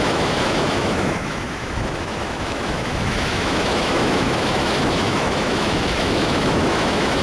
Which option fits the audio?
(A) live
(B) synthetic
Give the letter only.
B